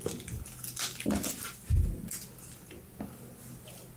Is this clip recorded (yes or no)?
yes